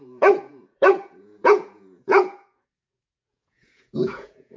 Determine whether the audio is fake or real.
fake